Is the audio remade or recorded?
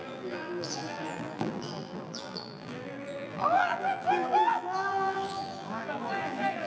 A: remade